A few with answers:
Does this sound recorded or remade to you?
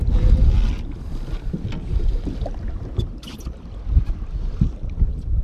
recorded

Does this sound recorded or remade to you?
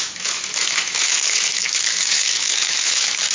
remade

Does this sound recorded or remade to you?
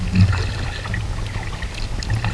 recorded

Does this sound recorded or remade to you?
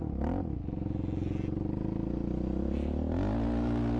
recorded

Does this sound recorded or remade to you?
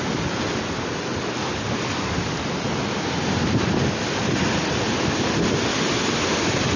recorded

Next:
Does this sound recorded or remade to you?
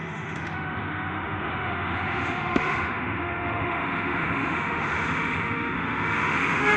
remade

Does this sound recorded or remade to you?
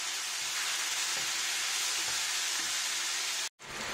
recorded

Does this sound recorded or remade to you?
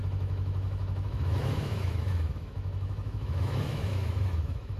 remade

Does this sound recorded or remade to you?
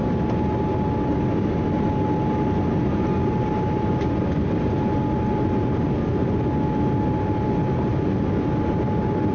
recorded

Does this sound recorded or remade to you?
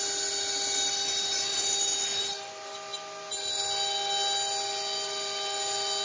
recorded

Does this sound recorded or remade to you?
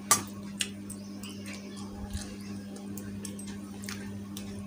recorded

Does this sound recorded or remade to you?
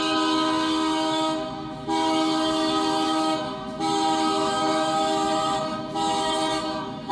remade